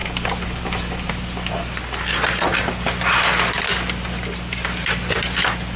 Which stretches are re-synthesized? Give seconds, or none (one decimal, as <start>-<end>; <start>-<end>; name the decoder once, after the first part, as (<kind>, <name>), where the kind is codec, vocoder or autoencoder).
none